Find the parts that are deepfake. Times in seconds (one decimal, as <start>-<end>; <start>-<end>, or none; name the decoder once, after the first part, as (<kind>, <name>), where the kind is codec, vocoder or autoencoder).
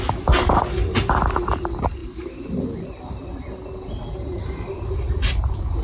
none